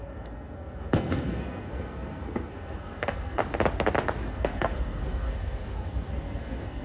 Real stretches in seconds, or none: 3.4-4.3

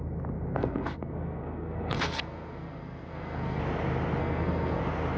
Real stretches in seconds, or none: 0.0-0.5; 3.6-4.2; 4.8-5.2

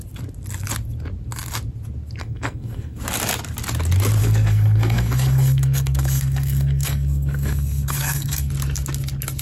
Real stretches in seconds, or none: 0.0-2.2; 3.0-4.2; 8.5-9.4

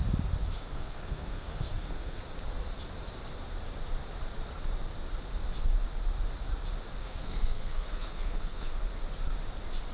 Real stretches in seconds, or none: 0.0-0.4; 2.2-7.0; 8.9-9.9

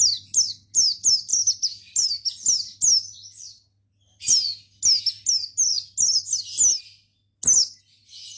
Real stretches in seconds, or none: 0.0-8.4

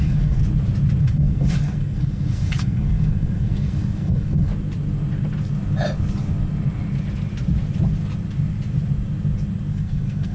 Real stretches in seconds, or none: 0.4-1.0; 4.5-9.7

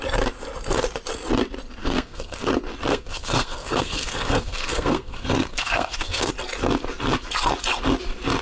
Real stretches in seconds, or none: 0.0-1.8; 2.5-2.9; 6.3-8.4

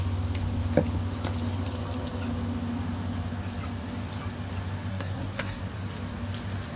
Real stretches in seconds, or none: 0.0-4.9; 5.6-6.8